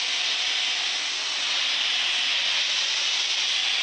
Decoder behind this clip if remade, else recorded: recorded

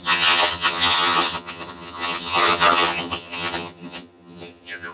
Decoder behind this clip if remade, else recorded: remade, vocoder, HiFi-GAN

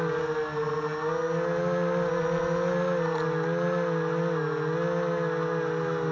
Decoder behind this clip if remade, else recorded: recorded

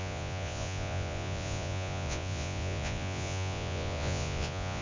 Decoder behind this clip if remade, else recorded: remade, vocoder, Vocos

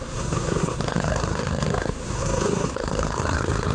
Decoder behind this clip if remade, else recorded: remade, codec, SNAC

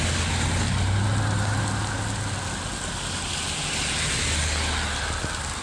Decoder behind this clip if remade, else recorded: recorded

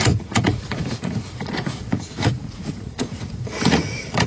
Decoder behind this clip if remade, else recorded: remade, vocoder, Vocos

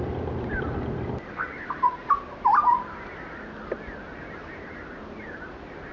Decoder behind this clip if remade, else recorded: recorded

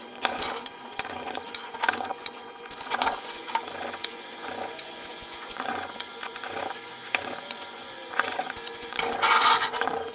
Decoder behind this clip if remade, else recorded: remade, vocoder, Vocos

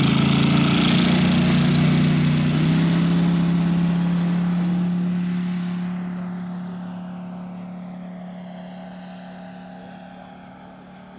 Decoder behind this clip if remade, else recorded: recorded